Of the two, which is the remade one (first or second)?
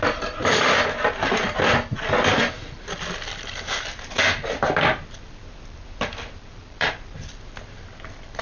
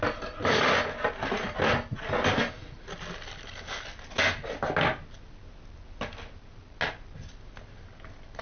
first